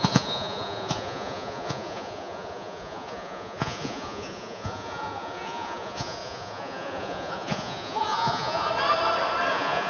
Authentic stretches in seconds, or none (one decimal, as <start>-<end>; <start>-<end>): 8.7-9.5